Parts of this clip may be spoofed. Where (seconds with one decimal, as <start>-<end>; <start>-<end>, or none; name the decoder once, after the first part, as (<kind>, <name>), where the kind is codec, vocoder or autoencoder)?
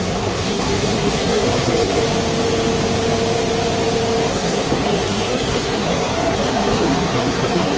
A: 0.0-2.0 (codec, SNAC); 4.3-7.8